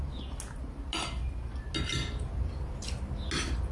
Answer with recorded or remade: recorded